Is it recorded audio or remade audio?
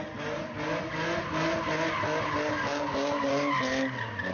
recorded